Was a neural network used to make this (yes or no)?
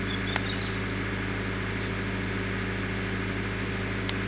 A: no